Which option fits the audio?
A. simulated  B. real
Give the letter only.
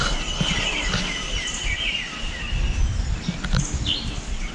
B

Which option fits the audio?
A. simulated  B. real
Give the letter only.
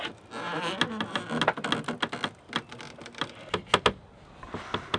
B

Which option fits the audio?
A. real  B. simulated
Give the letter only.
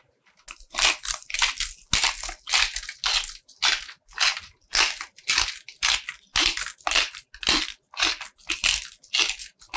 A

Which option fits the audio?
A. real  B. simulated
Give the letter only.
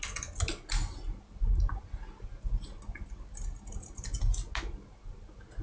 A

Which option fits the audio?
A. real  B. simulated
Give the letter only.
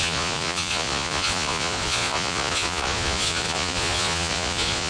B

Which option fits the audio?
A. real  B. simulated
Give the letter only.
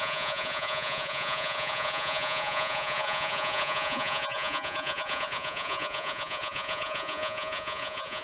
B